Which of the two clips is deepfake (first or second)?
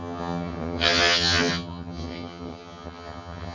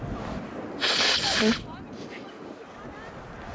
first